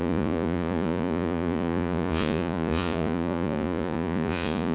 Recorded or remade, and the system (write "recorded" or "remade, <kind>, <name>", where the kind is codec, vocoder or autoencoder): remade, vocoder, Vocos